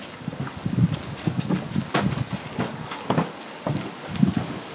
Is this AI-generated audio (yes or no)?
yes